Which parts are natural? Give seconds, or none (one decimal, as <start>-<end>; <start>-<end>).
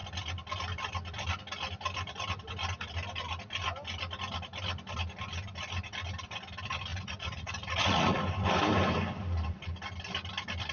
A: 0.0-6.9; 8.2-10.7